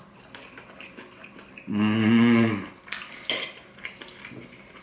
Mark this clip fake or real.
real